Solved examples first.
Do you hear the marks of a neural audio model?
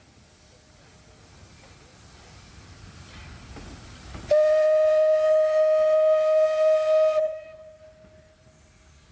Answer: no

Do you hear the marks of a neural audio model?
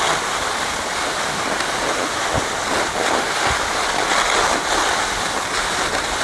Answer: no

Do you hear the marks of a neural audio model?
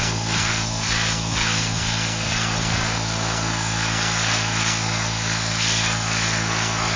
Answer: yes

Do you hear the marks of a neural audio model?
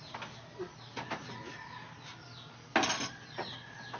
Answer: no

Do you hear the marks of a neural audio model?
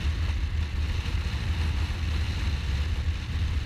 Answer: no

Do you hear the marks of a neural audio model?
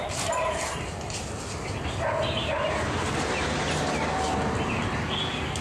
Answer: no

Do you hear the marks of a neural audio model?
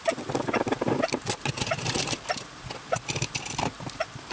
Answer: no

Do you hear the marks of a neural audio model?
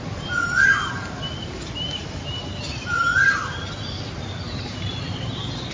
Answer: no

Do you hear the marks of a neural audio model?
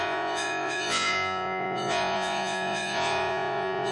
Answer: yes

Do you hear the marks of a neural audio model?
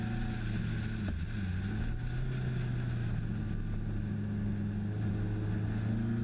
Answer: no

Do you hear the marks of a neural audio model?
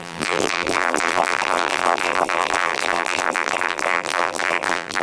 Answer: yes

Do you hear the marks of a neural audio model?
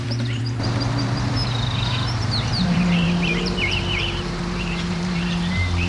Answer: yes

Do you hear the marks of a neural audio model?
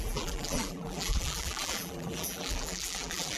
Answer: yes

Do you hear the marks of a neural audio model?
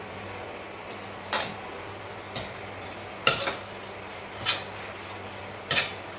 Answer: no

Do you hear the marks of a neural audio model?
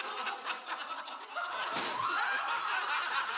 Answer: no